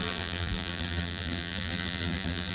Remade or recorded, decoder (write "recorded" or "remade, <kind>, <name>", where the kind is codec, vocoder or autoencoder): remade, vocoder, BigVGAN v2